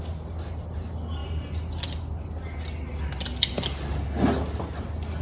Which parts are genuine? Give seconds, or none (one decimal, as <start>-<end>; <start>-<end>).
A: 0.0-5.2